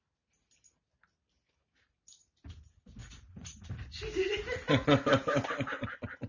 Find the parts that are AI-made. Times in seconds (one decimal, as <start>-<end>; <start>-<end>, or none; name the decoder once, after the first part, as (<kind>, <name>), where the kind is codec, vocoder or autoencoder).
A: 3.0-3.6 (vocoder, Vocos)